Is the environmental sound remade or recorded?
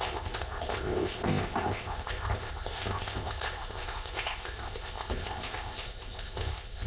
remade